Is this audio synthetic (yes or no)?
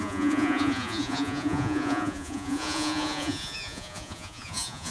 yes